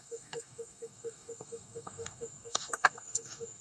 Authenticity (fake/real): fake